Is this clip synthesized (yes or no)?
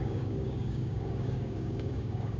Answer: yes